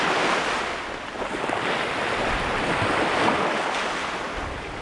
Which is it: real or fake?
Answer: real